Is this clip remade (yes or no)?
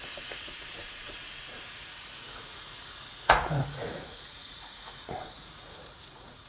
yes